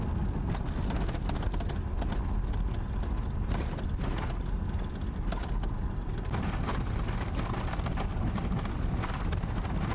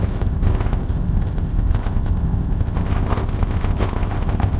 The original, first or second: first